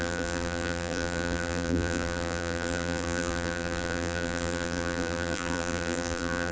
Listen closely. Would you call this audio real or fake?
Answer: fake